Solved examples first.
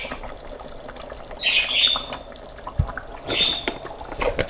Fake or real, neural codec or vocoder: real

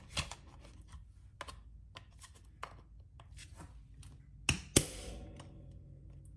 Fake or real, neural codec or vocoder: real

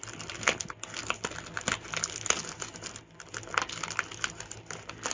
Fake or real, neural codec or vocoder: real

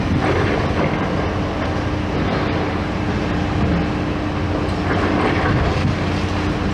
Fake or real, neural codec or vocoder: real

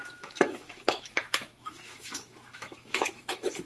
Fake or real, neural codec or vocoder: fake, autoencoder, DAC-VAE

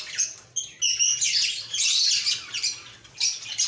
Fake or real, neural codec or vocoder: real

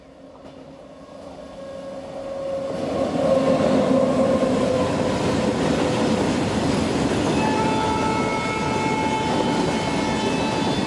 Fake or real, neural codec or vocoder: real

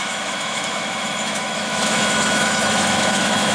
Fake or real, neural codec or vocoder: fake, autoencoder, DAC-VAE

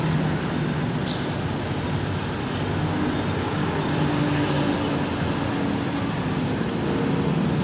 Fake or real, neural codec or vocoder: real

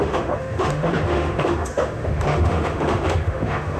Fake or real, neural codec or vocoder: fake, autoencoder, DAC-VAE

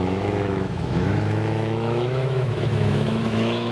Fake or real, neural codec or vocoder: fake, autoencoder, DAC-VAE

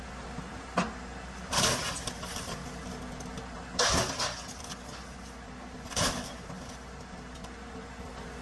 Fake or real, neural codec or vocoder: real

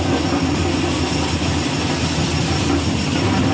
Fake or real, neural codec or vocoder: real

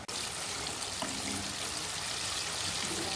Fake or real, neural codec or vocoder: real